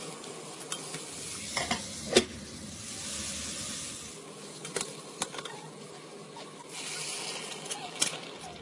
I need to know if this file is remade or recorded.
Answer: recorded